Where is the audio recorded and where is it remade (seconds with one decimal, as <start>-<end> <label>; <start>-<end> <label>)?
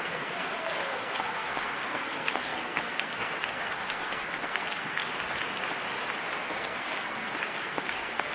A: 0.0-5.0 remade; 5.0-6.5 recorded; 6.5-8.3 remade